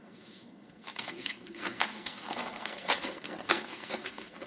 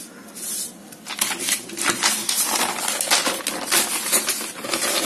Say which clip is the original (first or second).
second